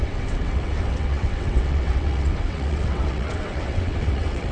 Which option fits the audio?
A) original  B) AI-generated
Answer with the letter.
B